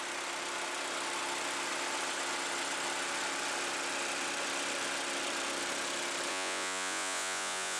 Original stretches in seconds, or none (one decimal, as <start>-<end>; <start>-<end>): 0.0-6.3